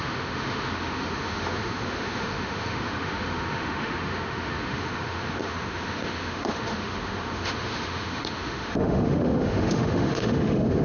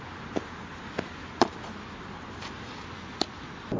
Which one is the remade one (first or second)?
first